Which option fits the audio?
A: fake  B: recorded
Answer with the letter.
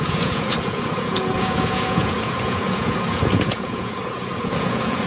A